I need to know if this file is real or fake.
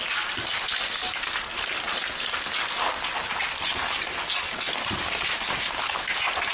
real